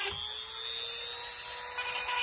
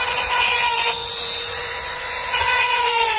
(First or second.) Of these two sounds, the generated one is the second